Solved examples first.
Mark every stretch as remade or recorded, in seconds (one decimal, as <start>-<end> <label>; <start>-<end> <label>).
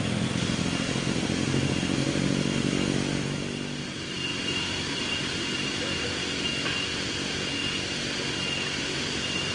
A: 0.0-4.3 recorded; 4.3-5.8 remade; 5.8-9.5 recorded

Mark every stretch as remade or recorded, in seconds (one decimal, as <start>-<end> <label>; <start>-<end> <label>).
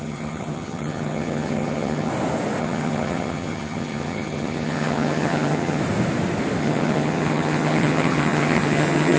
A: 0.0-2.1 remade; 2.1-2.6 recorded; 2.6-5.8 remade; 5.8-6.6 recorded; 6.6-9.2 remade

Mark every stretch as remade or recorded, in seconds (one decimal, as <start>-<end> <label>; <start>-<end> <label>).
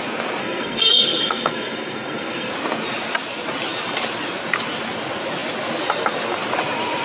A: 0.0-0.4 recorded; 0.4-2.5 remade; 2.5-7.0 recorded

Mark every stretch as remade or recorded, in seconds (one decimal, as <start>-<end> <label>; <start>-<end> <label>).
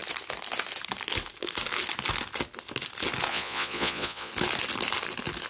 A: 0.0-3.3 recorded; 3.3-4.3 remade; 4.3-5.5 recorded